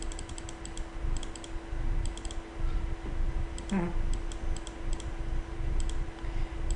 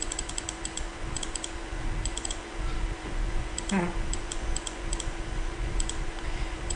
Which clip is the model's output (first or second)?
second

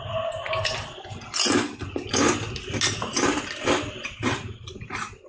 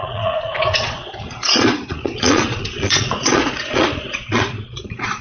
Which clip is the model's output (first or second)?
second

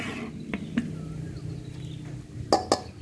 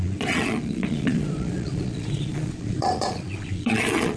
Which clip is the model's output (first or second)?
second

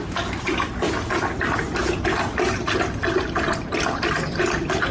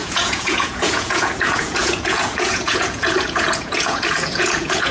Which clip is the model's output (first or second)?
second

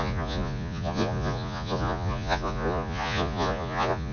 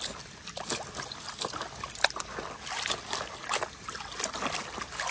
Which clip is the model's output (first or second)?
first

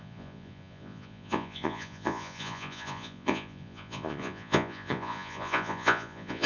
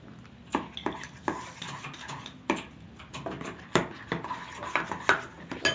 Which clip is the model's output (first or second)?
first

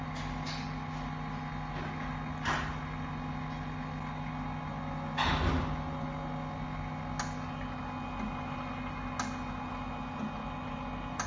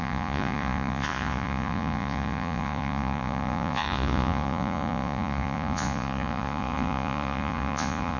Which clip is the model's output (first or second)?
second